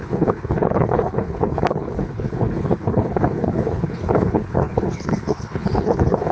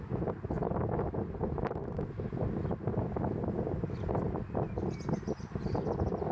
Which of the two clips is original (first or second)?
second